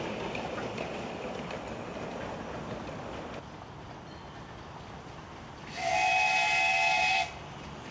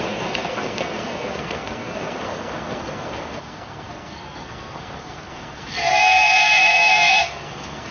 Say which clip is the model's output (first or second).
second